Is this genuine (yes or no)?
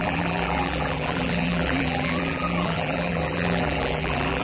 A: no